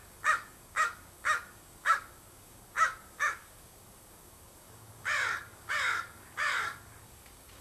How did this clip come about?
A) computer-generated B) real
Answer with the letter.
A